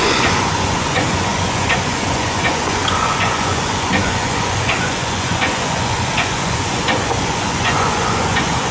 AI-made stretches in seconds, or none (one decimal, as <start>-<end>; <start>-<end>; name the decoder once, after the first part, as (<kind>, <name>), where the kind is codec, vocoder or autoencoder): 0.0-8.7 (vocoder, Vocos)